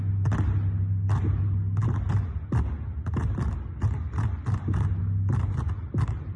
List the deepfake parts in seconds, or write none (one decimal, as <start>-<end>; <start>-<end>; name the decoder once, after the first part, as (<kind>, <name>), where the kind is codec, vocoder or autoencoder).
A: none